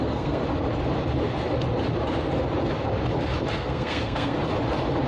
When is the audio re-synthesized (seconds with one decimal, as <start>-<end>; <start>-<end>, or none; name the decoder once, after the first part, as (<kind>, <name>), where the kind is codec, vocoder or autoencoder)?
0.0-0.4 (codec, SNAC); 3.5-4.4